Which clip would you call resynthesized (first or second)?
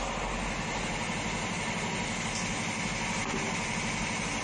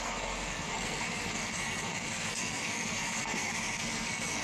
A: second